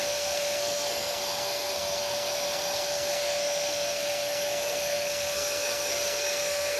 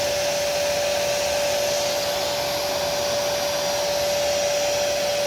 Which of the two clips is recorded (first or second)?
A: second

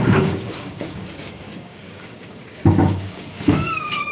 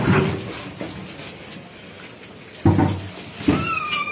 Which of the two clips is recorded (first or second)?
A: second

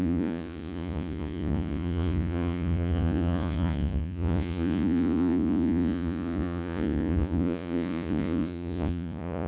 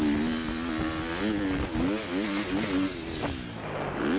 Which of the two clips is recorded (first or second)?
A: second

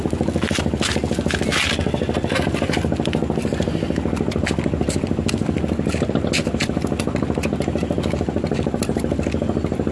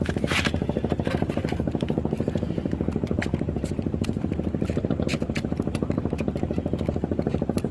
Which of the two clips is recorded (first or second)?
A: first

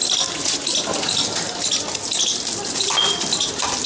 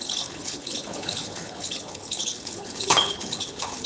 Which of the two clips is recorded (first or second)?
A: first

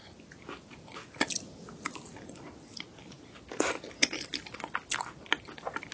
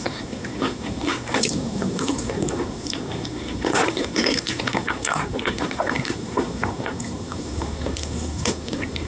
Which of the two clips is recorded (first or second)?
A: first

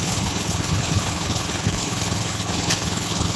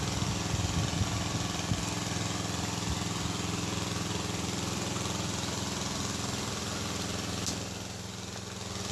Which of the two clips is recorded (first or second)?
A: second